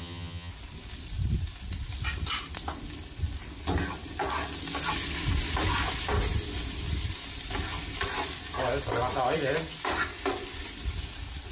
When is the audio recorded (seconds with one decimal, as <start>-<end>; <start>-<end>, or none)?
0.5-11.5